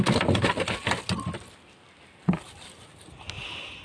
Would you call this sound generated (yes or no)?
no